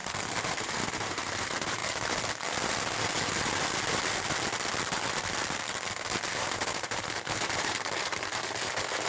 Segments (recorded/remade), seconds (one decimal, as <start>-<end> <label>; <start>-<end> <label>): 0.0-1.8 remade; 1.8-6.3 recorded; 6.3-9.1 remade